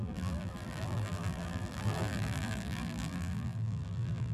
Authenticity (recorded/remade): remade